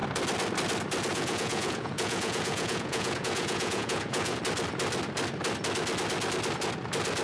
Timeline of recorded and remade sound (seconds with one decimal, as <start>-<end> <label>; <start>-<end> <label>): 0.0-1.1 recorded; 1.1-4.4 remade; 4.4-7.2 recorded